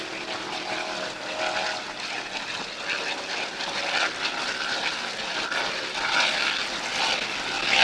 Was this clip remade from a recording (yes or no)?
no